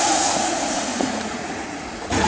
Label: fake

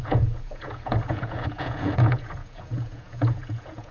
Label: fake